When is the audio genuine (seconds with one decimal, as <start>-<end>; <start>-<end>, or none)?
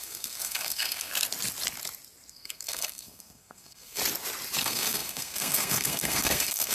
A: 1.1-2.3; 4.0-4.6